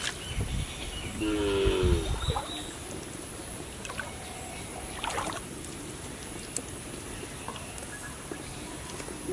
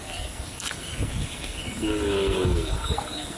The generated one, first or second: second